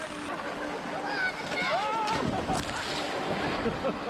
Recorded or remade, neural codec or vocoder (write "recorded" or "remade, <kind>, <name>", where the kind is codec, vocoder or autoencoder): recorded